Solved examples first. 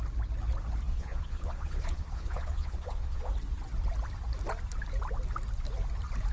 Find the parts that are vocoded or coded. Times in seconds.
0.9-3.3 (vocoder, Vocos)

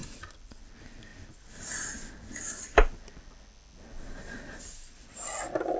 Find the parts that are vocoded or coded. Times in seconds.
none